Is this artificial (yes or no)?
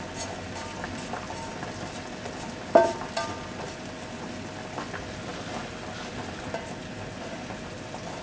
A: no